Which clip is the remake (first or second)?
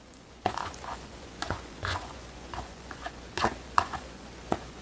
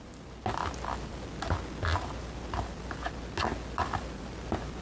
first